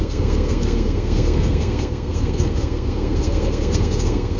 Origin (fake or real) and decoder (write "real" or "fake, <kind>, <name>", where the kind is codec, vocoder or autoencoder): fake, codec, SNAC